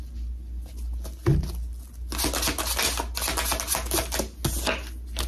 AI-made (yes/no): no